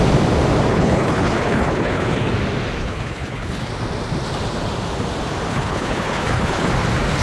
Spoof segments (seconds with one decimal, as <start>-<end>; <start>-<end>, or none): 0.7-2.3; 2.8-3.7; 5.5-6.7